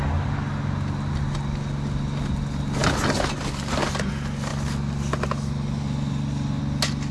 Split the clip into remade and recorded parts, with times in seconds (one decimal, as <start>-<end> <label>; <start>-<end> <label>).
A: 0.0-7.1 recorded